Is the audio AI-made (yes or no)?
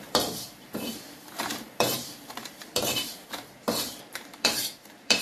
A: yes